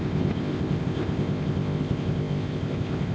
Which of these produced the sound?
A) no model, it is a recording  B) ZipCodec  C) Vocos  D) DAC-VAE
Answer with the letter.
B